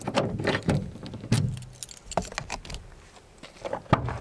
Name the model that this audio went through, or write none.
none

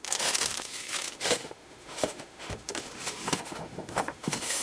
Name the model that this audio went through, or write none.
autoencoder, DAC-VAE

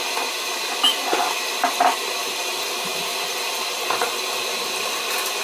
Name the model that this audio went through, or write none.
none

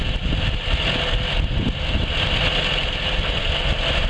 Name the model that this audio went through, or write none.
none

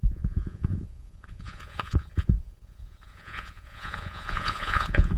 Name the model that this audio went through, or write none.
vocoder, Vocos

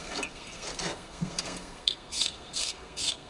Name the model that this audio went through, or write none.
codec, SNAC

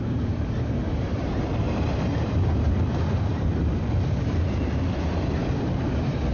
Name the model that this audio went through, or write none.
vocoder, BigVGAN v2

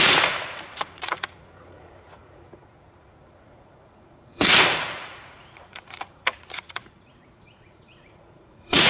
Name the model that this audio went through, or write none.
vocoder, Vocos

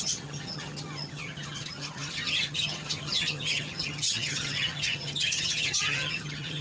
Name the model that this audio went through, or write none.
vocoder, HiFi-GAN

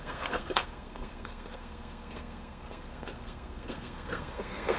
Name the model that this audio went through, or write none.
codec, SNAC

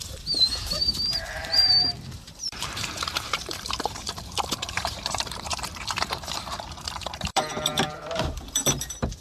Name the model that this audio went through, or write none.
vocoder, BigVGAN v2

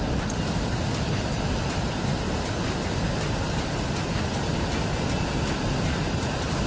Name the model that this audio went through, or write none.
none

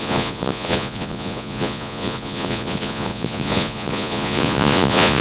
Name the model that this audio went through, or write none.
vocoder, Vocos